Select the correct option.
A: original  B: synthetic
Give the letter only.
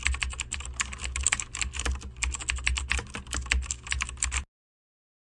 A